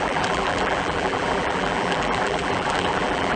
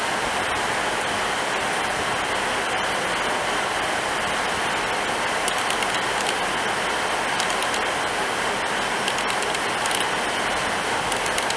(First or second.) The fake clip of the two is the first